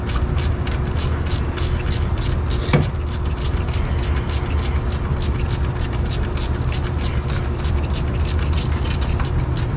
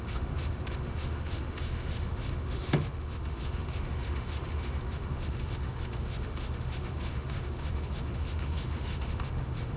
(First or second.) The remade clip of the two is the second